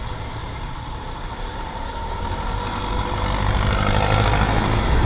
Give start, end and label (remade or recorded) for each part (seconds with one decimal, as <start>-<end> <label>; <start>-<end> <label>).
0.0-0.4 recorded; 0.4-2.6 remade; 2.6-5.1 recorded